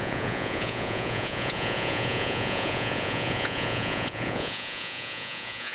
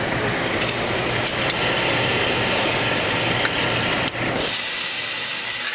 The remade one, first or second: first